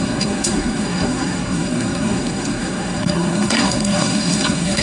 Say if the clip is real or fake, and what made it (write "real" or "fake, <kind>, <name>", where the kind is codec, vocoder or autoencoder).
fake, codec, SNAC